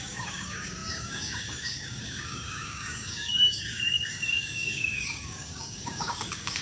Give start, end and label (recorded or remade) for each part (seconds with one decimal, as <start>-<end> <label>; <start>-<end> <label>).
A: 0.0-6.6 remade